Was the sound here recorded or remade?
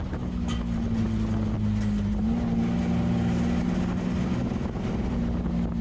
recorded